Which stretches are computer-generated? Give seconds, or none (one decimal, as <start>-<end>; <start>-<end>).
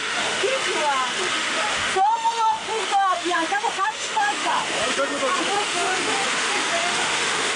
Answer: 0.0-0.5; 1.3-4.8; 5.4-7.6